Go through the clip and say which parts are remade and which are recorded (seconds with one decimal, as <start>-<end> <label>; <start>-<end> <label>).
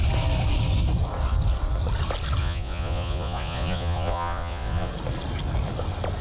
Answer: 0.0-2.4 recorded; 2.4-4.9 remade; 4.9-6.2 recorded